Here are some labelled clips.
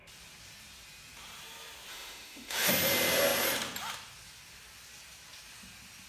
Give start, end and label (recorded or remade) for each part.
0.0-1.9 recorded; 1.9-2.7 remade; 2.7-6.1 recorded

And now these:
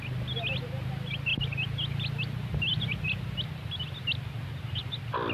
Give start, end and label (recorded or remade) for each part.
0.0-5.3 recorded